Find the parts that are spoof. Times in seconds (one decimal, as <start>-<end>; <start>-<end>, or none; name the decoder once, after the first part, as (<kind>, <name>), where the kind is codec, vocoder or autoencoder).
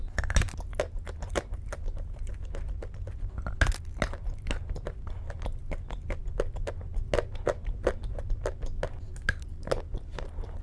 none